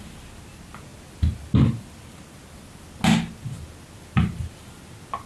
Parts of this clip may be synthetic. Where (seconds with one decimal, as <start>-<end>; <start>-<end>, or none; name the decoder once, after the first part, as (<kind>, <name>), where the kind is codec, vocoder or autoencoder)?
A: none

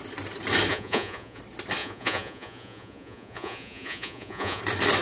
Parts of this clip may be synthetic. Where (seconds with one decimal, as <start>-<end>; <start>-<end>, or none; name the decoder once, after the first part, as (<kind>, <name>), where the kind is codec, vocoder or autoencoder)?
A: 0.7-1.4 (vocoder, Vocos); 1.8-4.6

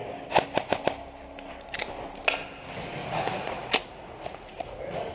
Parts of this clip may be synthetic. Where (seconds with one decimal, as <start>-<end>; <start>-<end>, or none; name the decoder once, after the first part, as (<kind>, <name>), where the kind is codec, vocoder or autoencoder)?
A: 3.0-5.1 (vocoder, Vocos)

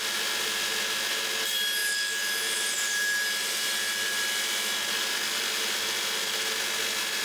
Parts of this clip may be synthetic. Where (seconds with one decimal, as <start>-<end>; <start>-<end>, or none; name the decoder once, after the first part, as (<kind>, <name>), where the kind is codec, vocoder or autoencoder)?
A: none